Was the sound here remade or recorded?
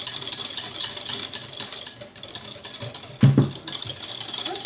recorded